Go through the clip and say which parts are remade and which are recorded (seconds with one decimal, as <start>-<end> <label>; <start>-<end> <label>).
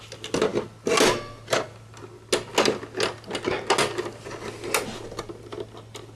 0.0-6.2 recorded